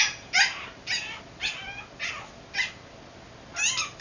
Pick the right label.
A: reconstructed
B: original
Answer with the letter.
B